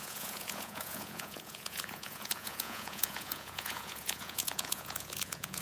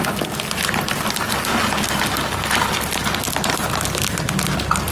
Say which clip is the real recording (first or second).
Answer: second